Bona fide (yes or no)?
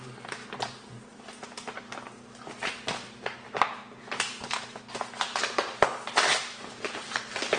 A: yes